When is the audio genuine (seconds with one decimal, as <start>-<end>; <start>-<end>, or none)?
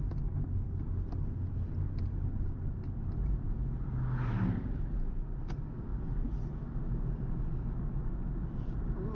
0.0-9.1